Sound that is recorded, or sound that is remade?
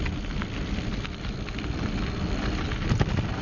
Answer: recorded